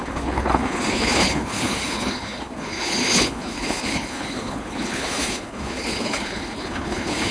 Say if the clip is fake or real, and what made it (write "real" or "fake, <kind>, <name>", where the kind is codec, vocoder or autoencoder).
fake, codec, HILCodec